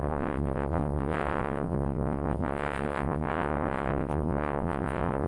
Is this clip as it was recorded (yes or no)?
no